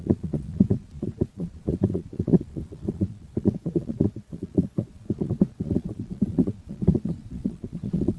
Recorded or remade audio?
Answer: remade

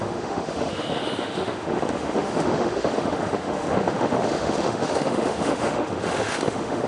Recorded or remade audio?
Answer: remade